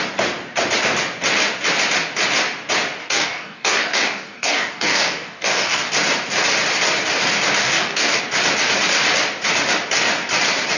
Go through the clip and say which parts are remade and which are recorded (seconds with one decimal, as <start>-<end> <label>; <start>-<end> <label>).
0.0-3.0 recorded; 3.0-5.9 remade; 5.9-7.6 recorded; 7.6-8.2 remade; 8.2-10.8 recorded